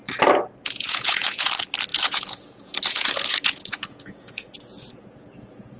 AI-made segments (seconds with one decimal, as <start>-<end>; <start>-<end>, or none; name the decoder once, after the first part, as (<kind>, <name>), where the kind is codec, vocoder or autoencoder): 0.6-1.5 (vocoder, Vocos); 1.9-5.8